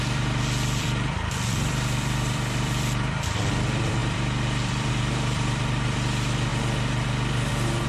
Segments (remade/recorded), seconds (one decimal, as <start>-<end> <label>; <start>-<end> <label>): 0.0-6.5 remade; 6.5-7.5 recorded; 7.5-7.9 remade